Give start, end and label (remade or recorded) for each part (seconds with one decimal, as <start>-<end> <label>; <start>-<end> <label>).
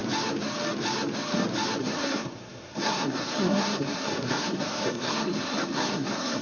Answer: 0.0-1.8 recorded; 1.8-6.4 remade